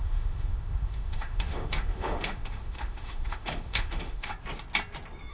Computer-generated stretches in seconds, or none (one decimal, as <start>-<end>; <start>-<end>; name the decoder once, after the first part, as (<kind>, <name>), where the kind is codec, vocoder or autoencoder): 0.0-4.3 (autoencoder, DAC-VAE)